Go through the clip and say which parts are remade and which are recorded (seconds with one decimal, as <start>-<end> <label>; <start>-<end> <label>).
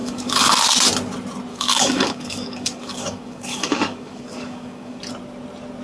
0.0-0.6 remade; 0.6-1.5 recorded; 1.5-5.0 remade; 5.0-5.8 recorded